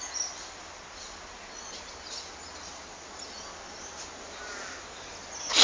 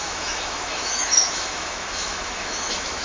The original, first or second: first